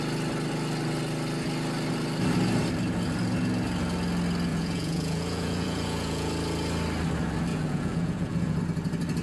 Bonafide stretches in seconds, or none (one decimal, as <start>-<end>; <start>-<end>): 0.0-4.5; 6.3-7.5; 8.6-9.2